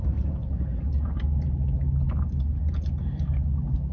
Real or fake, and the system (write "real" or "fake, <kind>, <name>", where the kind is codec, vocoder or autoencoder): real